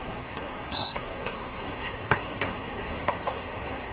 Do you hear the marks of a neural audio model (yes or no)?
yes